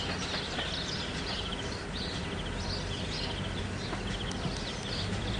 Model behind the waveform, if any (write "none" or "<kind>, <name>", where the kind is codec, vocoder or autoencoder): none